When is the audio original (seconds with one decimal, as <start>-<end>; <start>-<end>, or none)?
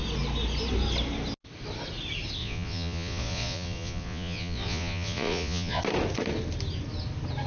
0.0-2.4; 5.8-7.5